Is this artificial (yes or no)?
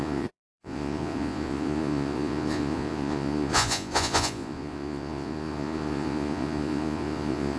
yes